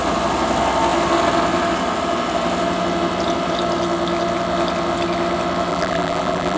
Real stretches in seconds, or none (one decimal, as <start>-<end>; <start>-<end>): 0.0-5.7